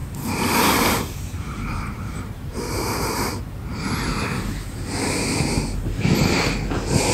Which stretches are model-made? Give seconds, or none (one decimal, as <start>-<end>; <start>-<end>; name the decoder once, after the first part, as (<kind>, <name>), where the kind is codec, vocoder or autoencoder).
0.0-3.4 (vocoder, BigVGAN v2)